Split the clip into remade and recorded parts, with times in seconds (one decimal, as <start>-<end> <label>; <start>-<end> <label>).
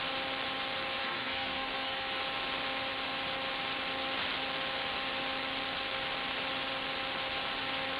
0.0-1.0 recorded; 1.0-2.2 remade; 2.2-8.0 recorded